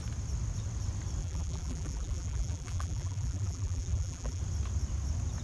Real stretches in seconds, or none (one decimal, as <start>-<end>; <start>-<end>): 0.0-1.2; 4.4-5.4